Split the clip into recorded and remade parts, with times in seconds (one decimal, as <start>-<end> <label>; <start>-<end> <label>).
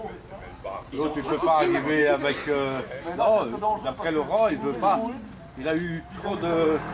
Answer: 0.0-6.9 recorded